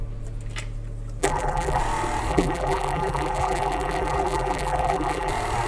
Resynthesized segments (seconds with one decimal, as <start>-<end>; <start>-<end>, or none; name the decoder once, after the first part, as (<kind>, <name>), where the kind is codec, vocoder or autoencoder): 1.2-1.8 (vocoder, BigVGAN v2); 2.3-5.3